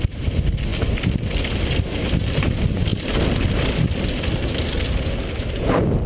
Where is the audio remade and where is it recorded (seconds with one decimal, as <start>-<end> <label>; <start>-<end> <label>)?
0.0-6.1 recorded